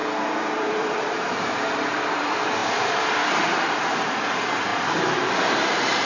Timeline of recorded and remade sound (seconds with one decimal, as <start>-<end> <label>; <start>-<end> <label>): 0.0-0.6 recorded; 0.6-4.7 remade; 4.7-5.5 recorded; 5.5-6.0 remade